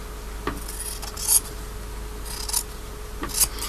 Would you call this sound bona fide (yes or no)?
yes